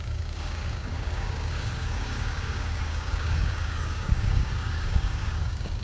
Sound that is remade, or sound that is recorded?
remade